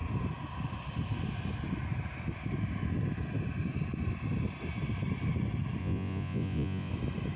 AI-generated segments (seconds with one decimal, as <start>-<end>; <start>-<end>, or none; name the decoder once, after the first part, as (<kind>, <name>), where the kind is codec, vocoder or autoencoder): 5.8-6.9 (vocoder, Vocos)